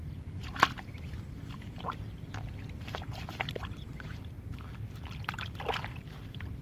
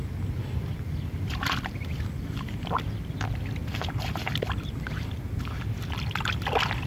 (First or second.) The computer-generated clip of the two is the first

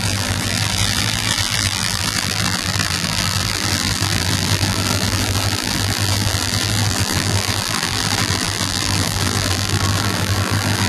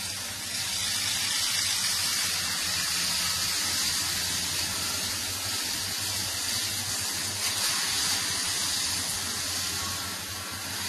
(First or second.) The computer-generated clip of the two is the first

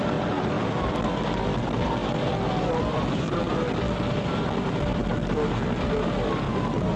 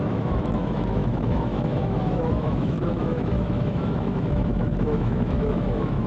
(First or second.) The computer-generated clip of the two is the second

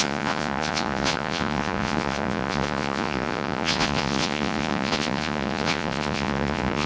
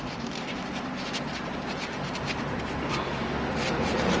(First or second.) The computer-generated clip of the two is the first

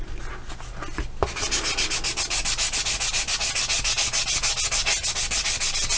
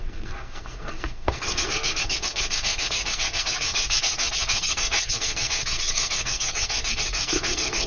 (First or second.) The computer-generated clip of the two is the second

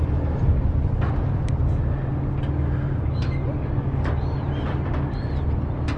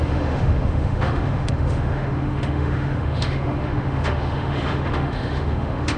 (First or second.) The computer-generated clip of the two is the second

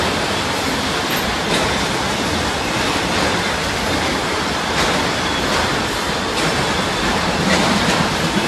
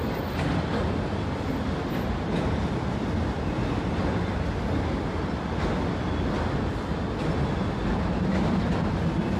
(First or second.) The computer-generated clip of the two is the first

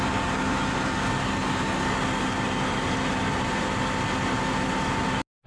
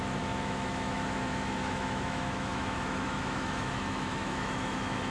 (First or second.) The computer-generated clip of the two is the second